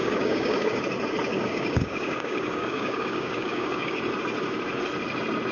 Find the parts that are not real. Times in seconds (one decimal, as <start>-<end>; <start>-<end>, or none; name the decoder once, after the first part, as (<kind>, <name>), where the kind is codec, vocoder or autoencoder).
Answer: 0.0-0.8 (codec, DAC); 1.3-4.0